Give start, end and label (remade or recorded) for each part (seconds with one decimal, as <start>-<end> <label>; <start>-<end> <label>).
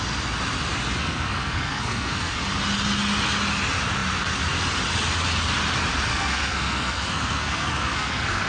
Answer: 0.0-1.0 recorded; 1.0-2.4 remade; 2.4-6.1 recorded; 6.1-8.5 remade